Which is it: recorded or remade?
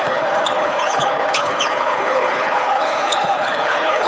remade